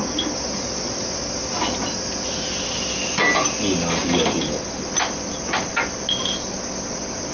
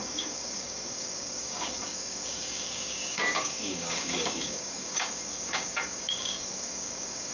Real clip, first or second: first